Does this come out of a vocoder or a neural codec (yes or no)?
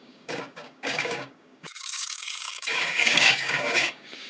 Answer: yes